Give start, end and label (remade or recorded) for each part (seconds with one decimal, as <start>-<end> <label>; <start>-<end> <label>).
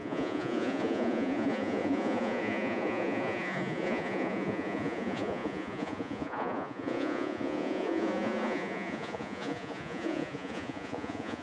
0.0-11.4 remade